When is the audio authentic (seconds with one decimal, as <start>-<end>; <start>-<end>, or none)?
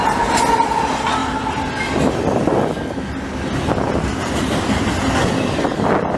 0.0-6.2